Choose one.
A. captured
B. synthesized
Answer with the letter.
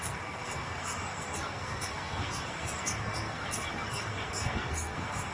B